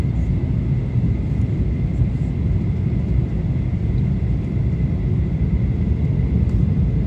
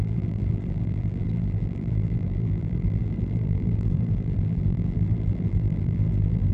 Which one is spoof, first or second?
second